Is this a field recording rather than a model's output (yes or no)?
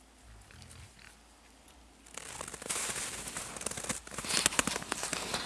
yes